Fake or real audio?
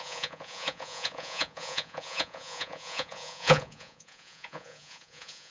fake